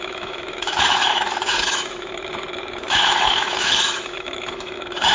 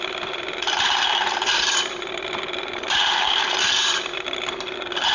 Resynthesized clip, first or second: first